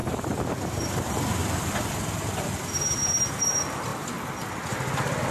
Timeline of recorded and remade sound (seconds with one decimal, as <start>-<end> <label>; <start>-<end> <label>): 0.0-0.5 remade; 0.5-1.4 recorded; 1.4-2.6 remade; 2.6-5.3 recorded